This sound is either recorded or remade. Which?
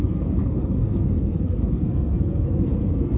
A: remade